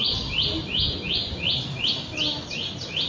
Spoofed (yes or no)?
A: no